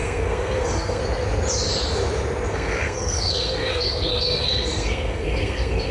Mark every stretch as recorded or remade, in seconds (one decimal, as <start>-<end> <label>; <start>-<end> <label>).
0.0-1.0 remade; 1.0-2.5 recorded; 2.5-5.9 remade